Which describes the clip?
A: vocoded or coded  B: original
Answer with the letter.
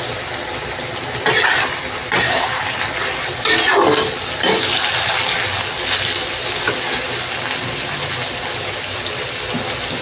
B